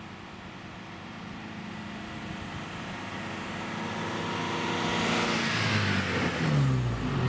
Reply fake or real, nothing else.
real